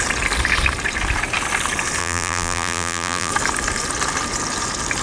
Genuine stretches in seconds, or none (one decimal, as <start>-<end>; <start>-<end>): 0.0-2.0; 3.3-5.0